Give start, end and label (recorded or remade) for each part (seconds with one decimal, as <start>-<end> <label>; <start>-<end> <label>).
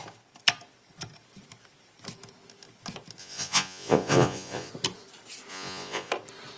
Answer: 0.0-3.2 recorded; 3.2-4.7 remade; 4.7-5.5 recorded; 5.5-6.1 remade; 6.1-6.6 recorded